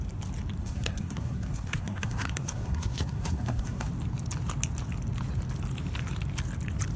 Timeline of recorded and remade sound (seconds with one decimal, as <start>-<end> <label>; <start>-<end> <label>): 0.0-0.6 recorded; 0.6-3.9 remade; 3.9-7.0 recorded

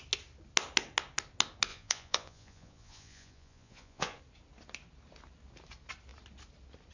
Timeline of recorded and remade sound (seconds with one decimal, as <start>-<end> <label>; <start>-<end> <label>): 0.0-1.7 recorded; 1.7-4.2 remade; 4.2-6.9 recorded

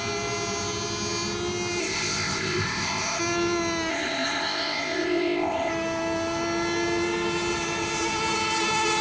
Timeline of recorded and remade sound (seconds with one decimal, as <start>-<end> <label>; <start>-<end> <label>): 0.0-1.8 recorded; 1.8-3.2 remade; 3.2-3.9 recorded; 3.9-5.7 remade; 5.7-9.0 recorded

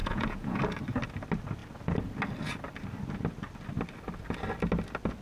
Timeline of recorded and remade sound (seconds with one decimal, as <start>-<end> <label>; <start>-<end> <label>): 0.0-0.6 remade; 0.6-5.2 recorded